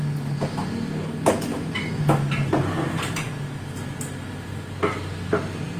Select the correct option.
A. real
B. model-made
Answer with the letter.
A